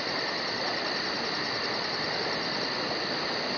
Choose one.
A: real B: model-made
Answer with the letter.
A